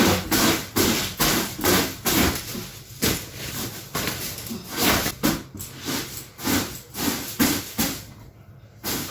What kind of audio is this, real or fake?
real